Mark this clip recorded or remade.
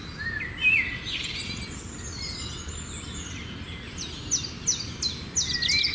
recorded